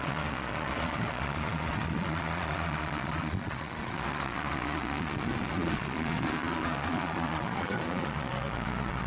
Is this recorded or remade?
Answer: remade